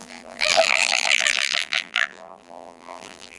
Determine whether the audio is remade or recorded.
remade